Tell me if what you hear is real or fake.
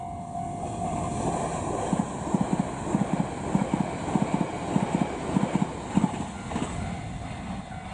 real